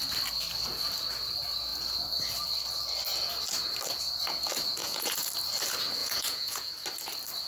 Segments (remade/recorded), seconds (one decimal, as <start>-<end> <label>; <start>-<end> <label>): 0.0-4.8 recorded; 4.8-5.3 remade; 5.3-6.0 recorded; 6.0-6.7 remade; 6.7-7.5 recorded